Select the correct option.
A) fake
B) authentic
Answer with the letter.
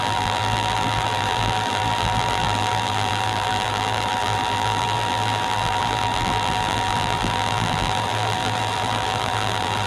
A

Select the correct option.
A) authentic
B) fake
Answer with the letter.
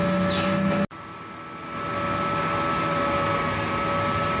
A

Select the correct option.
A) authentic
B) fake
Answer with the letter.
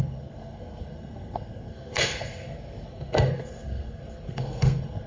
B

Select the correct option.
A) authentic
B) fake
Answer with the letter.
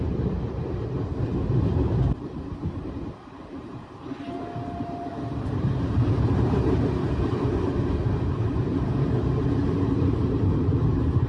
B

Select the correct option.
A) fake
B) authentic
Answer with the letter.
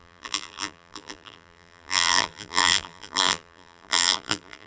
A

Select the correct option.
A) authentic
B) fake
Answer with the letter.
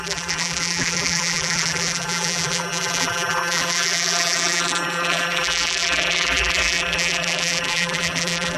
B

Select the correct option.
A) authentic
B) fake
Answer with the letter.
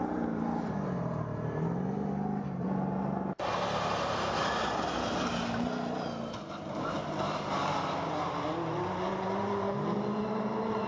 A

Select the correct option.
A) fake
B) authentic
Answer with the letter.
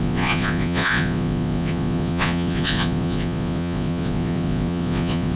A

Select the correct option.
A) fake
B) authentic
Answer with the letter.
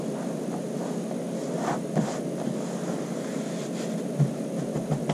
B